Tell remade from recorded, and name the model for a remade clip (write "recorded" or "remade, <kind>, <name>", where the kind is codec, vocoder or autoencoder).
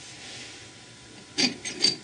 recorded